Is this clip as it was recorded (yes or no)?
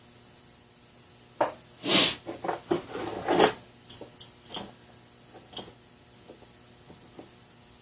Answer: yes